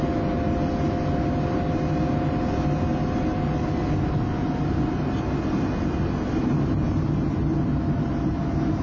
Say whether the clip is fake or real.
real